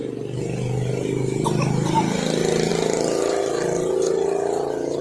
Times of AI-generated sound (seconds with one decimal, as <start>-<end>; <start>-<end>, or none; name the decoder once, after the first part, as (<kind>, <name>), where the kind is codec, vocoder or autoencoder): none